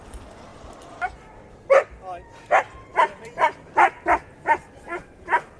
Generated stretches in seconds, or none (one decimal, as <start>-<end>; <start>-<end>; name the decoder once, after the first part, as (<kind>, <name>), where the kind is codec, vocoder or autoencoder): 0.5-1.5 (vocoder, BigVGAN v2); 2.9-5.0